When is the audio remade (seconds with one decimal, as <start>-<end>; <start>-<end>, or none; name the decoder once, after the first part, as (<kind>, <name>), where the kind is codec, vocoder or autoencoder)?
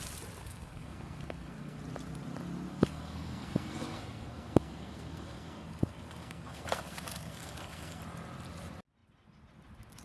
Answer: 0.4-1.8 (codec, SNAC); 2.7-8.0